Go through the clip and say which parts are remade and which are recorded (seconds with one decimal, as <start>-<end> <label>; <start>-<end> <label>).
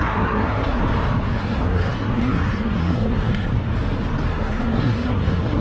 0.0-0.8 remade; 0.8-1.4 recorded; 1.4-3.6 remade; 3.6-4.3 recorded; 4.3-5.6 remade